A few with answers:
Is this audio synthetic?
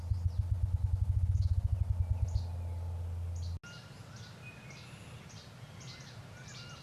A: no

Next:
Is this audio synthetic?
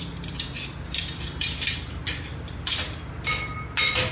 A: no